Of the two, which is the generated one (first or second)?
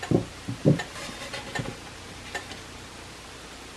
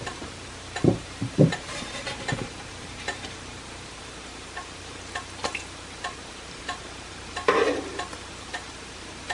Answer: second